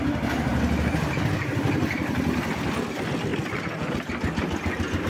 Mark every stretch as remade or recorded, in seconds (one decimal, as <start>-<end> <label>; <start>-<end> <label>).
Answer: 0.0-0.5 recorded; 0.5-1.1 remade; 1.1-3.3 recorded; 3.3-3.9 remade; 3.9-5.1 recorded